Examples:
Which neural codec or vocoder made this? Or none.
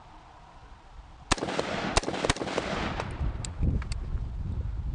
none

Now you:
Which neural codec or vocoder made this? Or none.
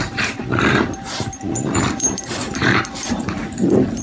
vocoder, BigVGAN v2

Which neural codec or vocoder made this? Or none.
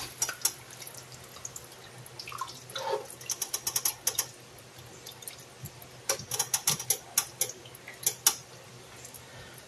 none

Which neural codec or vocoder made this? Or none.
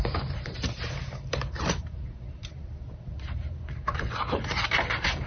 vocoder, BigVGAN v2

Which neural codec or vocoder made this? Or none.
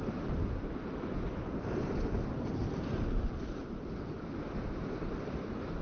vocoder, BigVGAN v2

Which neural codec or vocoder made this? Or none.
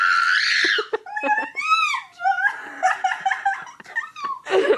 none